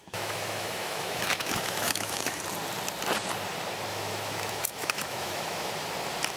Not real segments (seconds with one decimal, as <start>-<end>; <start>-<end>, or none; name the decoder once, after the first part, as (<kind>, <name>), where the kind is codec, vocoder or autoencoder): 0.0-2.4 (autoencoder, DAC-VAE); 3.9-5.7